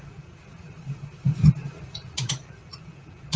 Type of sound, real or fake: fake